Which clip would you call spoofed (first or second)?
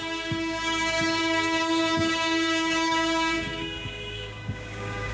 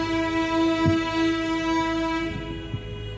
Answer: first